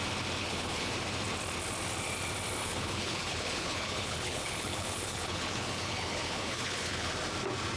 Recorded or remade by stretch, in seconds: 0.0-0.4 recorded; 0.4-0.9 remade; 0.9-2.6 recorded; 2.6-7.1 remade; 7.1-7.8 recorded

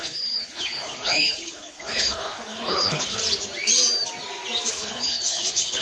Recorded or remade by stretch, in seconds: 0.0-3.2 remade; 3.2-4.7 recorded; 4.7-5.8 remade

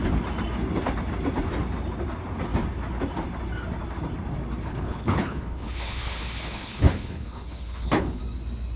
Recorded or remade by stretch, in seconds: 0.0-4.7 recorded; 4.7-8.2 remade; 8.2-8.8 recorded

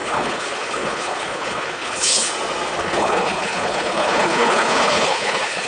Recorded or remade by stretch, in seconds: 0.0-2.3 remade; 2.3-2.8 recorded; 2.8-5.7 remade

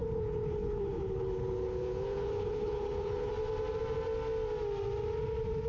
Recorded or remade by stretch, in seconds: 0.0-3.3 remade; 3.3-5.7 recorded

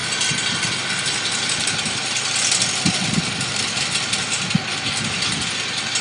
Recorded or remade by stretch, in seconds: 0.0-6.0 recorded

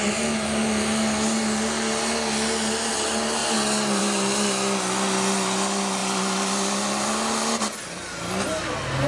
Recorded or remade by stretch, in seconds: 0.0-9.1 recorded

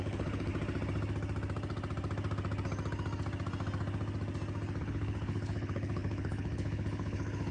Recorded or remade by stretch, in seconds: 0.0-0.5 remade; 0.5-4.8 recorded; 4.8-7.5 remade